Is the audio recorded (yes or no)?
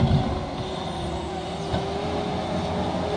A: yes